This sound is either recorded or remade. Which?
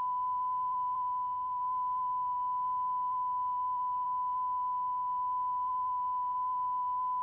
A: remade